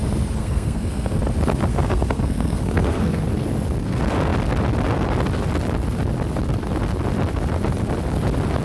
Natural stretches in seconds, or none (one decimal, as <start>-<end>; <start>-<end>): 0.0-0.4; 1.2-1.7; 3.2-8.6